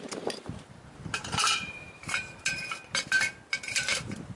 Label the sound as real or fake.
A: fake